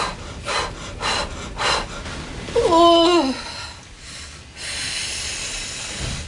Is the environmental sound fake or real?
real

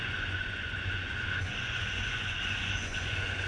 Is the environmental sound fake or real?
fake